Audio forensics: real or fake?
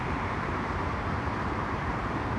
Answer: fake